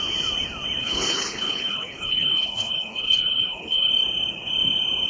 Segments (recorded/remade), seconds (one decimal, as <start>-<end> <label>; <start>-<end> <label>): 0.0-0.8 recorded; 0.8-3.9 remade; 3.9-5.1 recorded